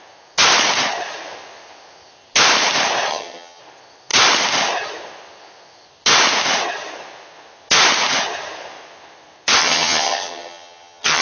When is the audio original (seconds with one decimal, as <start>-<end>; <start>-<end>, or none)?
0.0-3.1; 3.6-9.6